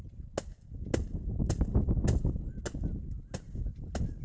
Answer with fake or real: real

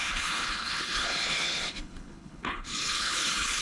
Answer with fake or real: fake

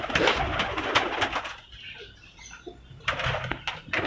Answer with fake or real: real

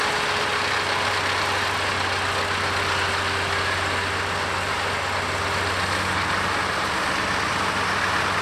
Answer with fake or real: real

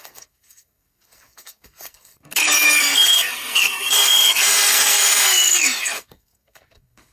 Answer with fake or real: fake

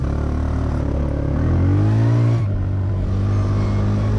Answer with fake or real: real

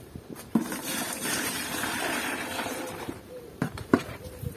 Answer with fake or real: fake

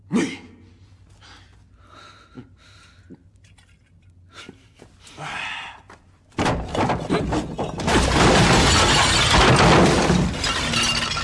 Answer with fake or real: real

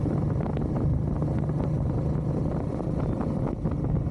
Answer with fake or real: real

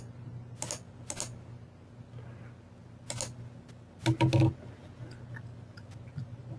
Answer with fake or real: real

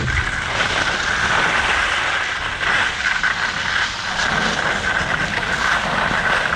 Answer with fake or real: real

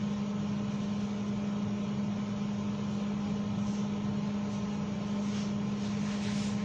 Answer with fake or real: real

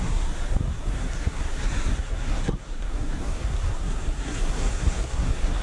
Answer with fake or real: fake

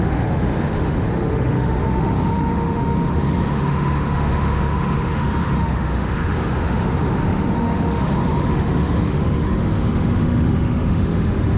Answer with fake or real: fake